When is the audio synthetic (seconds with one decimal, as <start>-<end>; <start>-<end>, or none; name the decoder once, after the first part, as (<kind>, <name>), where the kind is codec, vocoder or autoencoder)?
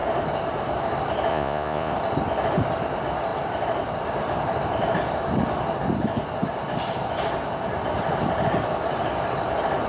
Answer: 1.3-1.9 (vocoder, Vocos)